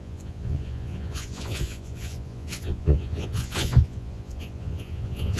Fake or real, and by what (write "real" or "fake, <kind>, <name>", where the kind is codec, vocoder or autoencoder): fake, vocoder, Vocos